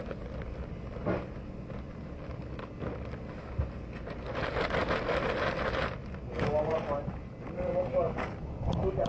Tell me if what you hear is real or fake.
real